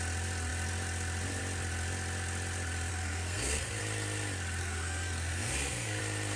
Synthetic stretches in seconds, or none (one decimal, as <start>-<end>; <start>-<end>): 2.9-3.8; 4.6-6.0